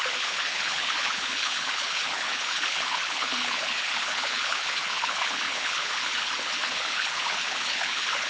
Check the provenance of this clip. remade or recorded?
remade